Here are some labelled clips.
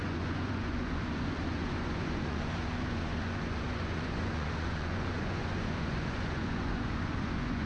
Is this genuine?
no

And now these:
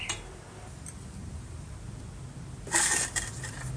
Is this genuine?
yes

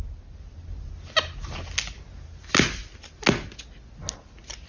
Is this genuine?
yes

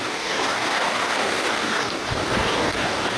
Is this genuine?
no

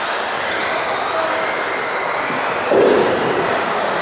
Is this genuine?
yes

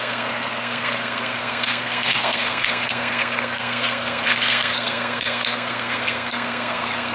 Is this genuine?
no